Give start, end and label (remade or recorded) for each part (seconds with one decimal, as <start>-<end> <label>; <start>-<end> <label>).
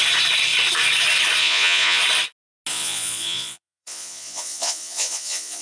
0.0-1.4 recorded; 1.4-2.0 remade; 2.0-2.7 recorded; 2.7-5.6 remade